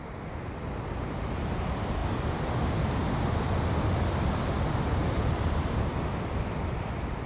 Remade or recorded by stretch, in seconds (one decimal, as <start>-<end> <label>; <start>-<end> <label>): 0.0-7.3 recorded